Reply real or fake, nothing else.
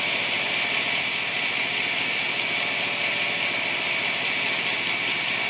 real